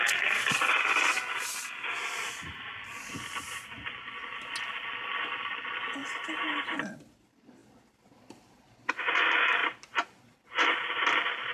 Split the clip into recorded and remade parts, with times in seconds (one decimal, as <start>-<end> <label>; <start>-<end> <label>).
0.0-6.0 recorded; 6.0-6.9 remade; 6.9-9.6 recorded; 9.6-10.2 remade; 10.2-11.5 recorded